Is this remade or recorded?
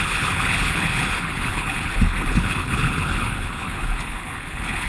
remade